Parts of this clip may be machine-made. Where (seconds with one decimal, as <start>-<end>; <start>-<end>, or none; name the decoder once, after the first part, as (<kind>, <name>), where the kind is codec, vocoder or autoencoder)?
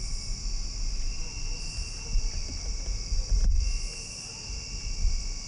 none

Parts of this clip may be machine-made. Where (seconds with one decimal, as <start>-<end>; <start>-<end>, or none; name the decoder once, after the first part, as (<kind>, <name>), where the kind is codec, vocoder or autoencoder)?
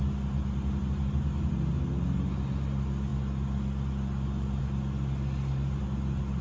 none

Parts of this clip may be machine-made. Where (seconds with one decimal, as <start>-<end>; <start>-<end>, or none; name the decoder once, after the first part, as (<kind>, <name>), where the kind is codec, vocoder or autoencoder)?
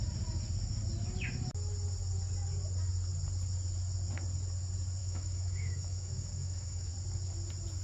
5.0-6.9 (autoencoder, DAC-VAE)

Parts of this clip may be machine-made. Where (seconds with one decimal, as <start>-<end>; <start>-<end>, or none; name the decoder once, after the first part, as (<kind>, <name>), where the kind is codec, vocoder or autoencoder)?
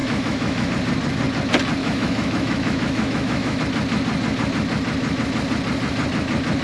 0.0-0.7 (autoencoder, DAC-VAE); 1.8-3.6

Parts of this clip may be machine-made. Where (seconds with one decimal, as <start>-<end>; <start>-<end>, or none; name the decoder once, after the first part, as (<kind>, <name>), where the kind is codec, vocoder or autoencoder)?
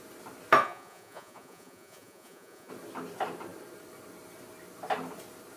0.6-2.7 (vocoder, Vocos)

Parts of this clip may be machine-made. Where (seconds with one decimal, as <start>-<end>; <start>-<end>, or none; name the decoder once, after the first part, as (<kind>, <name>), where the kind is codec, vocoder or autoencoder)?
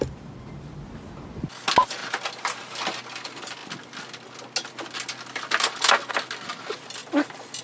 none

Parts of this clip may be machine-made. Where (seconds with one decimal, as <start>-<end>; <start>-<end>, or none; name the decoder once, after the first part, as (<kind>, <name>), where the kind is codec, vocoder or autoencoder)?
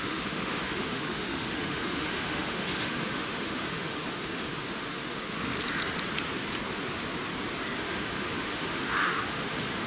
0.0-5.5 (autoencoder, DAC-VAE); 7.8-9.9